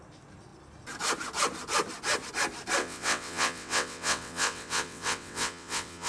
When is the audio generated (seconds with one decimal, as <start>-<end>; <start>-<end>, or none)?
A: 2.8-6.1